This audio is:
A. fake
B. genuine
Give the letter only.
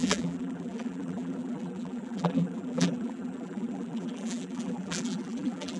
A